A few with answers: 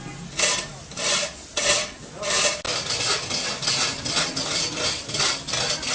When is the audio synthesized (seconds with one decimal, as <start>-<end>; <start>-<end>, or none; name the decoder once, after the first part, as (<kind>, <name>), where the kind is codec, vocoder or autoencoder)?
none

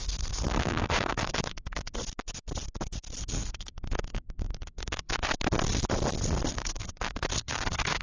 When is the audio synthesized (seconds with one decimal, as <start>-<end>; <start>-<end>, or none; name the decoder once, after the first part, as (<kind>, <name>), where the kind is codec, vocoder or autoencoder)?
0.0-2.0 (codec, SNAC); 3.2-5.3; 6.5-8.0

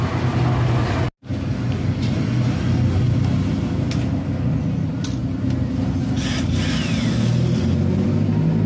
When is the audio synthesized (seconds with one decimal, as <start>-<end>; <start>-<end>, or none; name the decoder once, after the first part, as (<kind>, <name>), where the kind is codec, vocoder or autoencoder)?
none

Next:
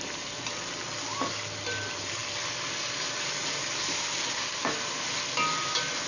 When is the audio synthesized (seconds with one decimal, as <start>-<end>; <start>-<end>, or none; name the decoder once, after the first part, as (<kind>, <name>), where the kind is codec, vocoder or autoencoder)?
none